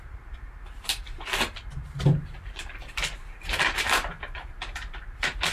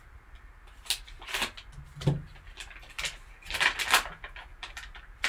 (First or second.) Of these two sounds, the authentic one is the second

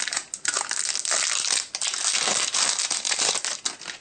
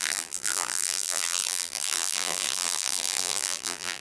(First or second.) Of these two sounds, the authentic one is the first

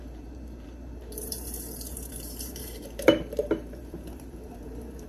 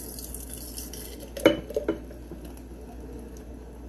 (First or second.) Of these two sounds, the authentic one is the second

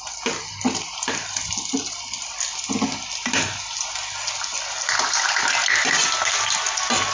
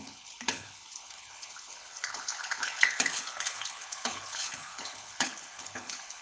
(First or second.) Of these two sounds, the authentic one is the first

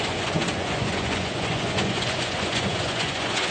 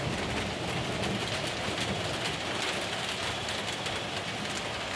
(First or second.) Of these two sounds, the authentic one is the second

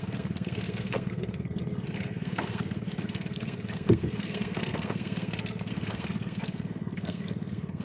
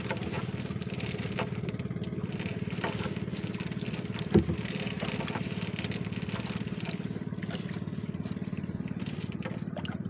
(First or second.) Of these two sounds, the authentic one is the second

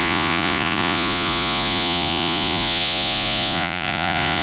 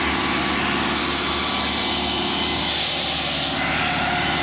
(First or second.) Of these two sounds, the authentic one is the second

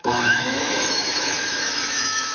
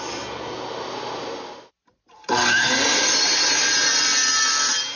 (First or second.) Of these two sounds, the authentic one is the second